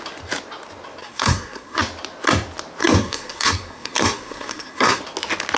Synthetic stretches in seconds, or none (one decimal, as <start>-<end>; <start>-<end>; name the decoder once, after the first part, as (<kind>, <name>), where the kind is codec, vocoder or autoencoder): 1.0-1.8 (codec, SNAC); 2.8-5.0